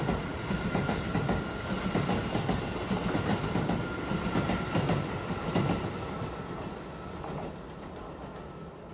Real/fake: real